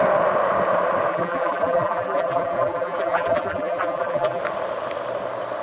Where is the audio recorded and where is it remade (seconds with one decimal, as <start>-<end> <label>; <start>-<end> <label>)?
0.0-1.1 recorded; 1.1-4.4 remade; 4.4-5.6 recorded